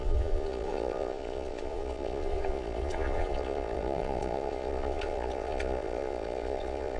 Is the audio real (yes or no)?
no